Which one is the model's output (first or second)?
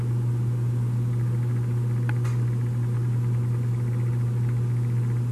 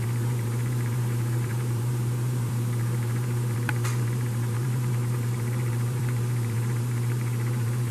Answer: second